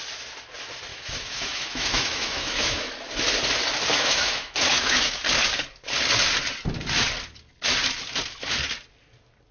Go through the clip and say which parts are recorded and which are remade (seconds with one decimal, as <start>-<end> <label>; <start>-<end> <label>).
0.0-0.9 recorded; 0.9-2.9 remade; 2.9-3.9 recorded; 3.9-5.2 remade; 5.2-9.5 recorded